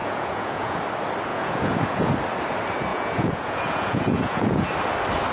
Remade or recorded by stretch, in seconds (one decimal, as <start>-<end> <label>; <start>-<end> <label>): 0.0-0.8 remade; 0.8-1.3 recorded; 1.3-2.1 remade; 2.1-2.9 recorded; 2.9-4.7 remade; 4.7-5.3 recorded